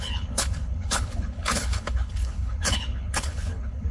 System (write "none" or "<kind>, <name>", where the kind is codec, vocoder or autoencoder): codec, HILCodec